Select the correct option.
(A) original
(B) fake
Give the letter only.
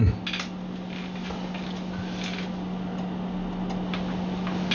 A